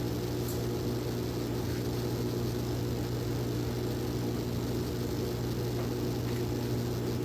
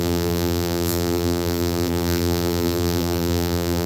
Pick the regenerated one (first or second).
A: second